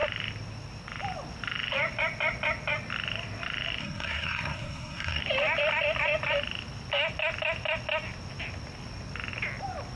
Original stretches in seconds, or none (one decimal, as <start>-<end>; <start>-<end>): 0.0-3.8; 5.2-10.0